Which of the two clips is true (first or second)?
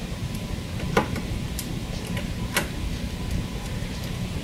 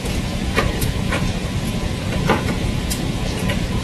first